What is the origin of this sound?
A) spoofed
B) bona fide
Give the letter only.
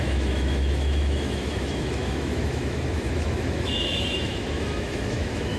A